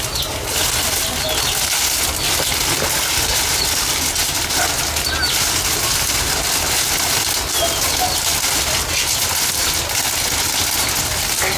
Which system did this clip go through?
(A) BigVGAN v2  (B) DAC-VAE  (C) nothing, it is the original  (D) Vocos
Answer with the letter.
C